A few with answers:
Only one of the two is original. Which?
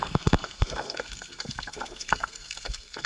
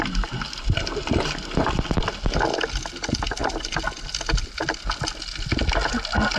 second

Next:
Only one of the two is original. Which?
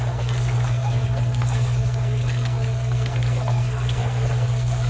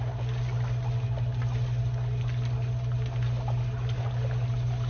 second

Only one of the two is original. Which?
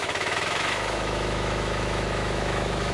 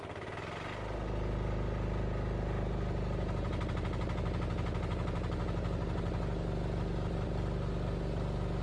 second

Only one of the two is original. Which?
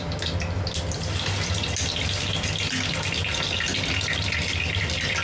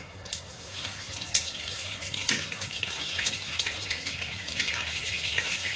first